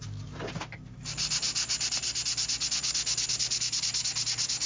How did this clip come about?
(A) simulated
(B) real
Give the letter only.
B